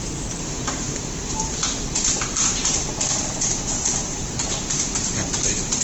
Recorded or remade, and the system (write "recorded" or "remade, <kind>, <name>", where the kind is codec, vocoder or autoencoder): remade, vocoder, BigVGAN v2